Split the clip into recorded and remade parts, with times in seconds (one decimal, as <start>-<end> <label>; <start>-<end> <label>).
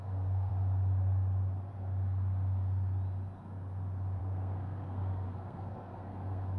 0.0-0.5 remade; 0.5-4.2 recorded; 4.2-6.6 remade